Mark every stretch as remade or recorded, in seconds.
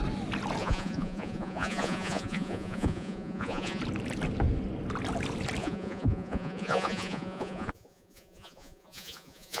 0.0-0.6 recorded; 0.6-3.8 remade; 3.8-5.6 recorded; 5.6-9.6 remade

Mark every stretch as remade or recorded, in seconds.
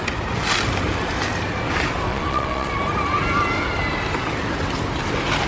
0.0-2.1 recorded; 2.1-2.7 remade; 2.7-5.5 recorded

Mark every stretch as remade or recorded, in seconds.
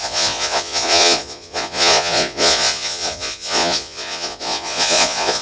0.0-5.4 remade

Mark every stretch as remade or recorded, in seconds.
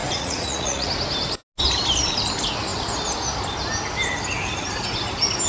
0.0-0.9 remade; 0.9-5.5 recorded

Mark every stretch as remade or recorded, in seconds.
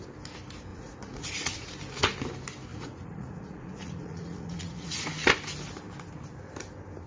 0.0-0.7 recorded; 0.7-1.7 remade; 1.7-2.7 recorded; 2.7-5.0 remade; 5.0-7.1 recorded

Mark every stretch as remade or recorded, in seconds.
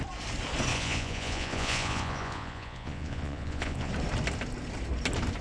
0.0-0.7 recorded; 0.7-3.9 remade; 3.9-5.4 recorded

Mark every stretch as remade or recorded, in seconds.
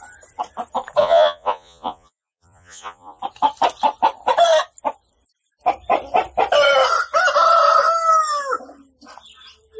0.0-1.0 recorded; 1.0-3.2 remade; 3.2-9.8 recorded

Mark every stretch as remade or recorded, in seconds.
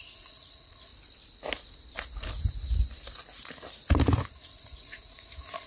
0.0-0.9 remade; 0.9-4.3 recorded; 4.3-5.7 remade